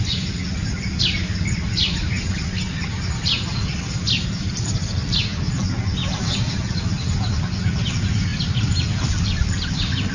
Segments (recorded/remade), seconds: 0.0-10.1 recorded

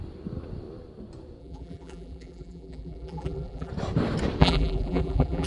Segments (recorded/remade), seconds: 0.0-1.4 recorded; 1.4-3.7 remade; 3.7-4.4 recorded; 4.4-5.5 remade